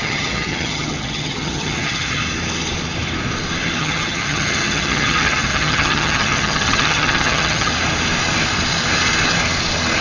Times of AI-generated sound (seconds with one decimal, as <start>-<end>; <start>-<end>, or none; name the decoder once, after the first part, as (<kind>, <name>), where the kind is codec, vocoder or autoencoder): 0.0-2.2 (vocoder, HiFi-GAN); 3.8-7.7